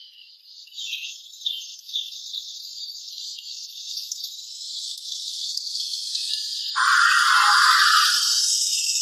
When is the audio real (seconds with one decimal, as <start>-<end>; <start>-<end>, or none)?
0.0-0.9; 3.1-3.5; 6.3-9.0